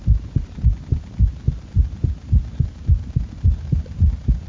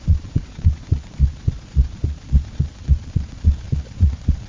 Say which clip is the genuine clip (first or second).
first